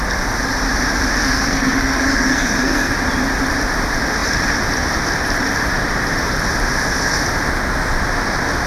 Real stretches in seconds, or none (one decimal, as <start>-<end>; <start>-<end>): 0.0-1.2; 2.9-8.7